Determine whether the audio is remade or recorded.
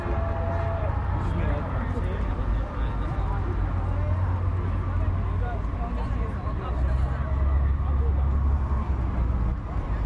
recorded